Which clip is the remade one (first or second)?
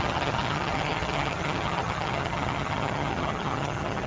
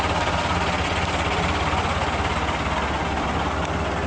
first